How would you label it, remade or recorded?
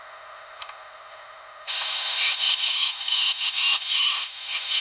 remade